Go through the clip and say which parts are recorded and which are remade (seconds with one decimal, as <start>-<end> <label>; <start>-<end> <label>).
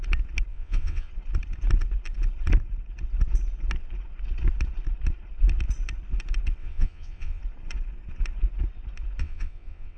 0.0-0.5 recorded; 0.5-1.1 remade; 1.1-6.6 recorded; 6.6-7.4 remade; 7.4-9.2 recorded; 9.2-10.0 remade